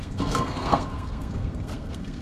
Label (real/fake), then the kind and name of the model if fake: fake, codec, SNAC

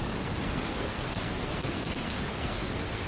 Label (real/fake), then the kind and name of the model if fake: fake, codec, SNAC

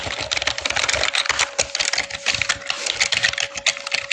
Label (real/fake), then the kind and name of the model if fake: real